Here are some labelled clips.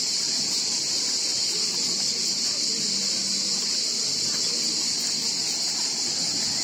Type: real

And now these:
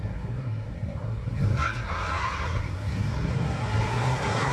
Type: fake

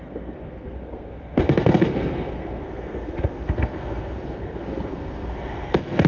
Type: fake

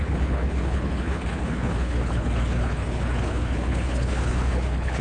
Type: fake